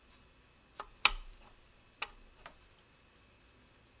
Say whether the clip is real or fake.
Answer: real